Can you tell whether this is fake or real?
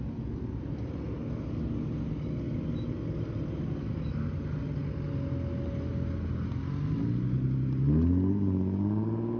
real